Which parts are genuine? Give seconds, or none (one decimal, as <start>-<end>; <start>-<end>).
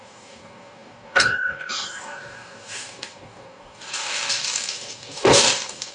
none